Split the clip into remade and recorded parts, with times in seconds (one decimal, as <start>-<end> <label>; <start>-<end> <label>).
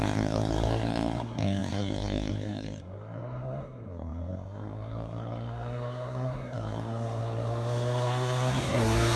0.0-9.2 remade